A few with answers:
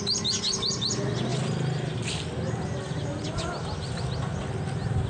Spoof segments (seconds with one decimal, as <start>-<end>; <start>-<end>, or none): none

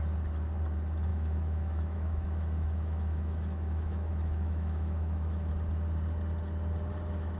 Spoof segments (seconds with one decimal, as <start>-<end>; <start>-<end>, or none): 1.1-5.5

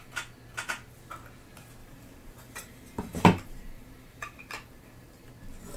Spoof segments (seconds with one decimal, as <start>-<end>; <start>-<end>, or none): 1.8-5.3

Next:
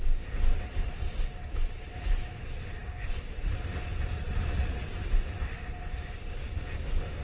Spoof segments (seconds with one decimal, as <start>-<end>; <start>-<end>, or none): none

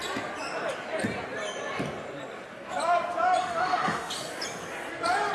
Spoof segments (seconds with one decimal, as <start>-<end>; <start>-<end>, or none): 3.4-4.1